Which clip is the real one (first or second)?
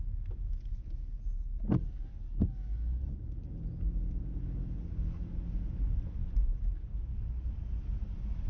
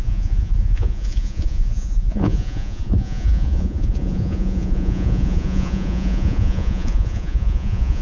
first